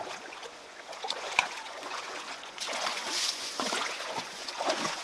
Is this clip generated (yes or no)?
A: yes